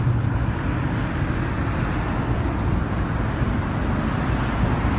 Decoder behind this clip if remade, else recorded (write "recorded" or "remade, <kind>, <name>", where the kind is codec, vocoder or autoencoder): recorded